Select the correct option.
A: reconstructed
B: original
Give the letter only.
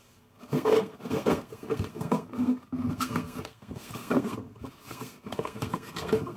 A